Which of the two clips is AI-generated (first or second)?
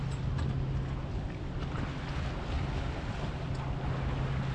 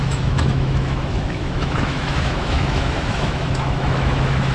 second